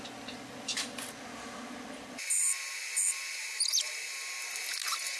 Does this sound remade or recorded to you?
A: recorded